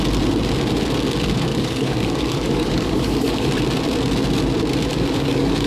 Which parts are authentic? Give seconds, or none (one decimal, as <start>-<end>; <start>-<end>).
0.0-1.5; 3.5-4.9